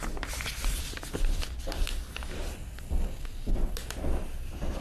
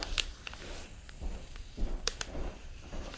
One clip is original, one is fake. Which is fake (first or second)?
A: second